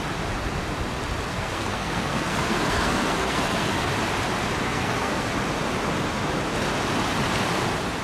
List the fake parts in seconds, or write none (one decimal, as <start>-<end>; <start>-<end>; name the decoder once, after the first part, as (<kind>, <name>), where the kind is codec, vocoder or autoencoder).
1.3-3.9 (codec, SNAC); 4.6-5.3